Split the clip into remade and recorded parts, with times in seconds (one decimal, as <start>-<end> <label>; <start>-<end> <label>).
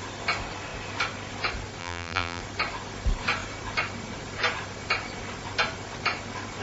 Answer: 0.0-1.8 recorded; 1.8-2.4 remade; 2.4-6.6 recorded